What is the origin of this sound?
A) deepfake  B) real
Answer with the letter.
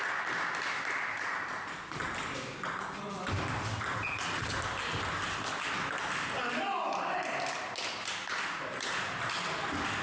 B